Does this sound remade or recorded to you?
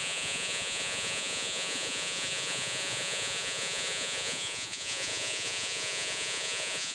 remade